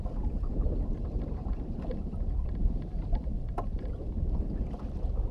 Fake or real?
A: real